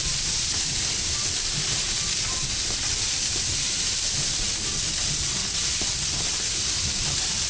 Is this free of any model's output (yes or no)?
no